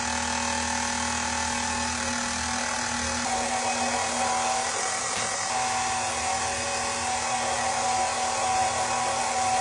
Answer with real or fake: real